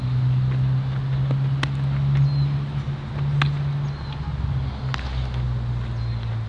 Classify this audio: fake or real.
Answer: real